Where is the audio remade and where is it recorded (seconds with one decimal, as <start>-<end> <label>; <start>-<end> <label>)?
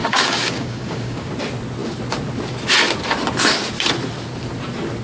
0.0-1.3 remade; 1.3-5.0 recorded